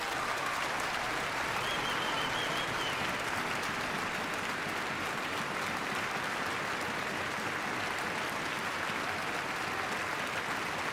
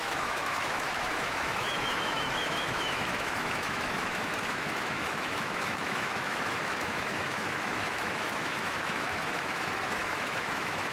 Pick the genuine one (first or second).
first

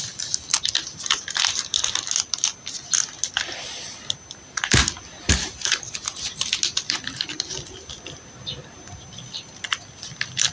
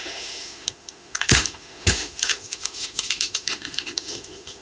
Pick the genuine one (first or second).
first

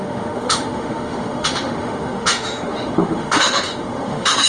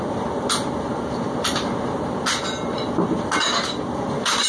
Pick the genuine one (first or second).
second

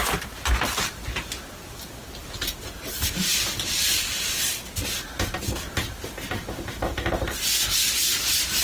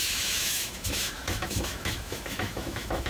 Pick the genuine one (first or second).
first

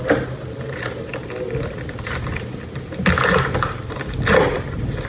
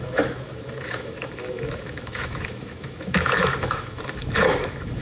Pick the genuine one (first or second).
first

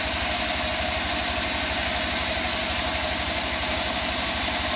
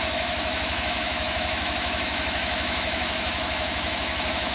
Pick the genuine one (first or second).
first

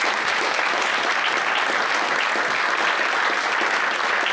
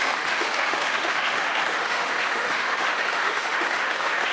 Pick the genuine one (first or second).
first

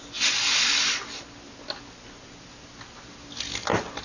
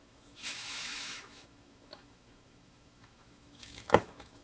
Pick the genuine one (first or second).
first